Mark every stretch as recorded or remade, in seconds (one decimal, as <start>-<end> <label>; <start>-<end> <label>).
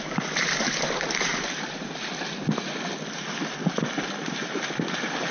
0.0-5.3 recorded